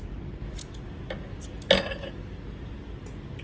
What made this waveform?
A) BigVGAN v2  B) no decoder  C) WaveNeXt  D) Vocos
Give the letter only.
B